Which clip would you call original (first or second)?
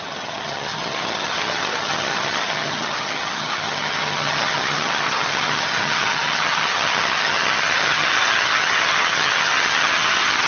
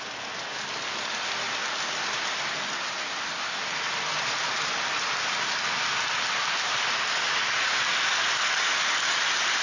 second